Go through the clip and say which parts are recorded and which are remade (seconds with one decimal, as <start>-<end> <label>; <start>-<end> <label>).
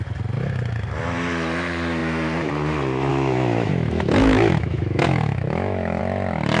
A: 0.0-3.1 recorded; 3.1-6.0 remade; 6.0-6.6 recorded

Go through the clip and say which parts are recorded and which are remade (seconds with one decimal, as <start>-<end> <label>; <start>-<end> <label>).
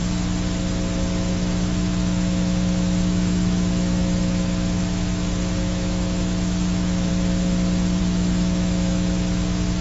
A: 0.0-1.3 recorded; 1.3-7.1 remade; 7.1-8.0 recorded; 8.0-9.8 remade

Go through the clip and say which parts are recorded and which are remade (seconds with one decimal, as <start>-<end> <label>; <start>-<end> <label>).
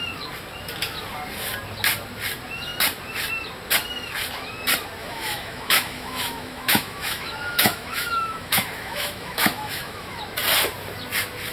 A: 0.0-5.0 recorded; 5.0-10.2 remade; 10.2-11.5 recorded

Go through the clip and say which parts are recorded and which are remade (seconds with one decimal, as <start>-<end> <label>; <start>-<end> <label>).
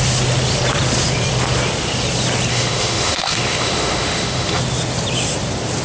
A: 0.0-2.5 recorded; 2.5-4.6 remade; 4.6-5.8 recorded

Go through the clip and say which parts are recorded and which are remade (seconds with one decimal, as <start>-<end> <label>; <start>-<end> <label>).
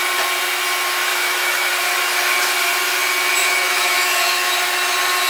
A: 0.0-1.1 recorded; 1.1-1.7 remade; 1.7-3.4 recorded; 3.4-4.5 remade; 4.5-5.3 recorded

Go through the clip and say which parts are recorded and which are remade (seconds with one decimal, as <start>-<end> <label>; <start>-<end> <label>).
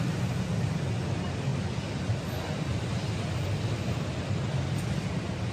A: 0.0-5.5 recorded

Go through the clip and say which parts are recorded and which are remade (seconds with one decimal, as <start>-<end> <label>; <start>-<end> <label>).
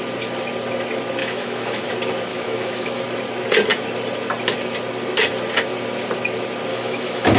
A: 0.0-1.2 recorded; 1.2-1.9 remade; 1.9-2.3 recorded; 2.3-3.0 remade; 3.0-6.7 recorded; 6.7-7.4 remade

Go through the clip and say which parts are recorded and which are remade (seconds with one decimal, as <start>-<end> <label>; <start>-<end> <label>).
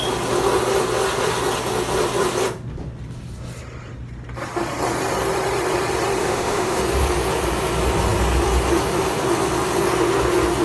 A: 0.0-6.2 recorded; 6.2-6.8 remade; 6.8-10.6 recorded